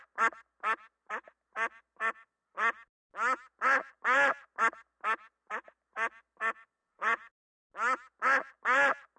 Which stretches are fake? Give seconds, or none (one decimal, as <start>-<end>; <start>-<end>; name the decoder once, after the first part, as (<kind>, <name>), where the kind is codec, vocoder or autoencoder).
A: 6.8-7.3 (vocoder, Vocos)